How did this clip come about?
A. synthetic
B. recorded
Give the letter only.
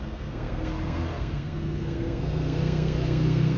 A